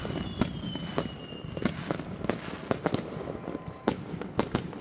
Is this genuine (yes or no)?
yes